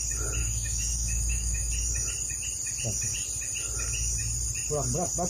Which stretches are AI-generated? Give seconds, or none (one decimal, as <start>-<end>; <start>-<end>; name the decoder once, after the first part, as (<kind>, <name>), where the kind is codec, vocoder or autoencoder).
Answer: 0.4-1.7 (autoencoder, DAC-VAE)